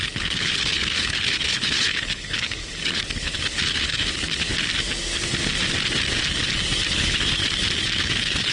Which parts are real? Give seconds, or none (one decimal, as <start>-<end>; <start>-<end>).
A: 4.5-6.9; 7.4-8.0